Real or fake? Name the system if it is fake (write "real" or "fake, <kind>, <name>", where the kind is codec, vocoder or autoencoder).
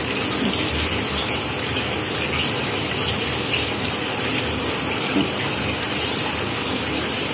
real